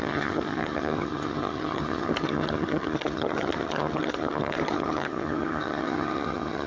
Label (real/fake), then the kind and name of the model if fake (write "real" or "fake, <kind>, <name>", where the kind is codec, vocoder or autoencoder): fake, vocoder, HiFi-GAN